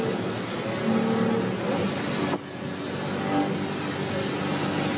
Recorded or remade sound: recorded